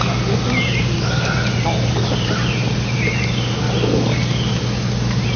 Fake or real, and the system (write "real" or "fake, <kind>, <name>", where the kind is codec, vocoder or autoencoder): real